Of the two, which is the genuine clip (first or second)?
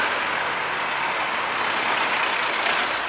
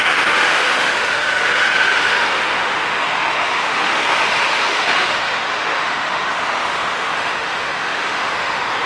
first